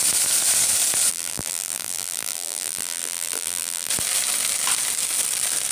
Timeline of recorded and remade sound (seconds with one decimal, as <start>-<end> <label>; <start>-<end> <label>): 0.0-1.1 recorded; 1.1-3.9 remade; 3.9-5.7 recorded